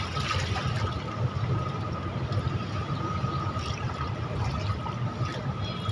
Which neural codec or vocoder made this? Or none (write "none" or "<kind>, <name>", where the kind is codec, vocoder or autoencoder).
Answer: none